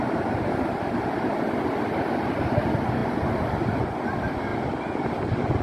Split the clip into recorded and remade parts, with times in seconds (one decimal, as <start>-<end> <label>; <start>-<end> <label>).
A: 0.0-5.6 recorded